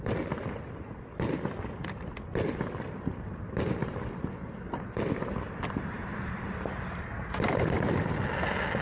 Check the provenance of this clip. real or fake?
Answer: real